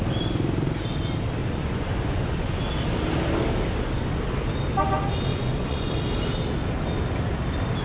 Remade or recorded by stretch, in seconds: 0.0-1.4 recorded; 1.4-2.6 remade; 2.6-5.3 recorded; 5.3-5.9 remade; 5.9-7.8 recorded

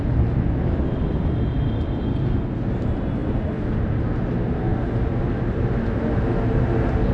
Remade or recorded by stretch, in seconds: 0.0-7.1 recorded

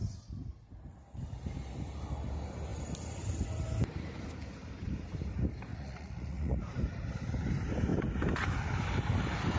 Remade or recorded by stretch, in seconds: 0.0-5.7 recorded; 5.7-6.6 remade; 6.6-9.6 recorded

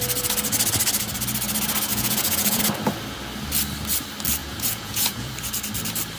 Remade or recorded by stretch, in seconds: 0.0-1.9 recorded; 1.9-2.6 remade; 2.6-4.4 recorded; 4.4-5.3 remade; 5.3-6.2 recorded